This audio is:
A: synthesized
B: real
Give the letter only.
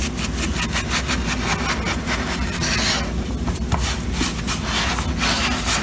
B